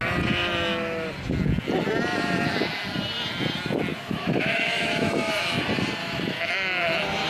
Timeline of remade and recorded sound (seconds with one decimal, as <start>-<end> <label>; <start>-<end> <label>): 0.0-3.9 recorded; 3.9-5.3 remade; 5.3-6.0 recorded; 6.0-6.5 remade; 6.5-7.3 recorded